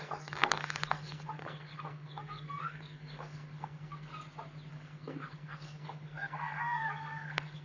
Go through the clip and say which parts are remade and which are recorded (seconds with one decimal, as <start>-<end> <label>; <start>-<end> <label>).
0.0-4.1 remade; 4.1-4.7 recorded; 4.7-7.6 remade